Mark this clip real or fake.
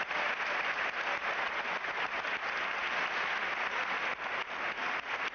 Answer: real